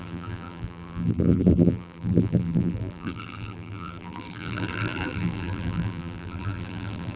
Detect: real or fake fake